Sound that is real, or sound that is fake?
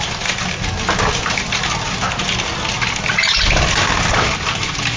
real